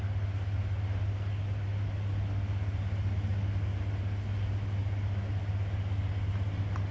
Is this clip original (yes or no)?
yes